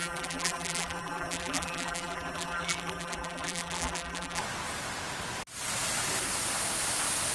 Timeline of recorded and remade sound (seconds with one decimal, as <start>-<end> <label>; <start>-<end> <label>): 0.0-4.4 remade; 4.4-7.3 recorded